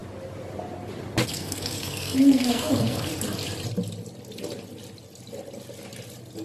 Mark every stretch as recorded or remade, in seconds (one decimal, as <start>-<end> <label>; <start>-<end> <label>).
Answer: 0.0-1.3 recorded; 1.3-3.1 remade; 3.1-6.4 recorded